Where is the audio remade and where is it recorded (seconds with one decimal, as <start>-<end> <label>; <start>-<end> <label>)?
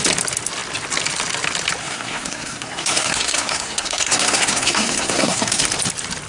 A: 0.0-1.8 recorded; 1.8-5.6 remade; 5.6-6.3 recorded